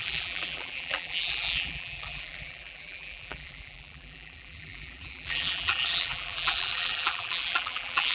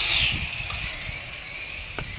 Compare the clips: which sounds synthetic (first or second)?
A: first